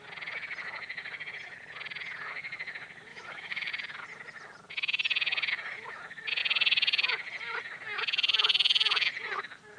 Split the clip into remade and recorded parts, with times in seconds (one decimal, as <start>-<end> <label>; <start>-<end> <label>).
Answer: 0.0-3.1 recorded; 3.1-3.7 remade; 3.7-9.8 recorded